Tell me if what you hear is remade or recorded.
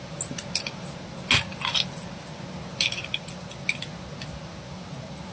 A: recorded